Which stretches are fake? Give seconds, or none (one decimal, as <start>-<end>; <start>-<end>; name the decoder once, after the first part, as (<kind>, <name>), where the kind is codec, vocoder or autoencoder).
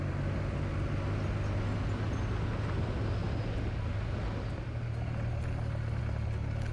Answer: none